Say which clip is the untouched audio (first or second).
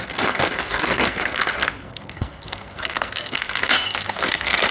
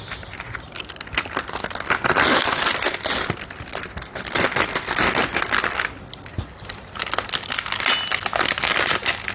second